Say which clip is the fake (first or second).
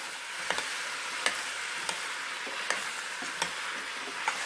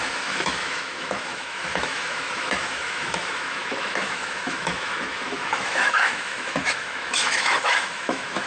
second